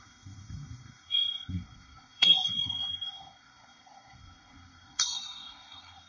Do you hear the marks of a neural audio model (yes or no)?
yes